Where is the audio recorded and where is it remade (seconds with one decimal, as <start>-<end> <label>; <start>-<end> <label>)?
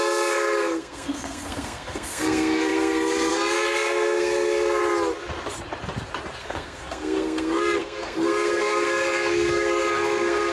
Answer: 0.0-4.8 remade; 4.8-6.4 recorded; 6.4-10.5 remade